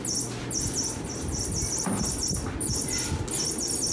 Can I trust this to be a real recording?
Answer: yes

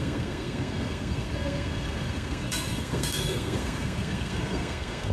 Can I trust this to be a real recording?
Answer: no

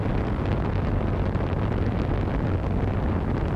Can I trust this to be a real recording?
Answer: yes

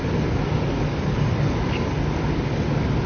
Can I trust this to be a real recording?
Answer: yes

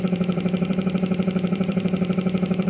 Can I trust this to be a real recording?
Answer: no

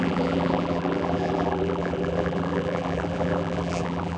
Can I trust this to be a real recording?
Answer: no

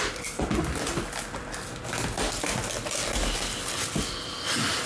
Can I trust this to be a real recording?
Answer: yes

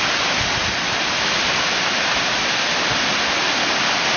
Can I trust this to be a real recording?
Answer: yes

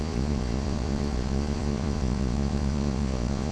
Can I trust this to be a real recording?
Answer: no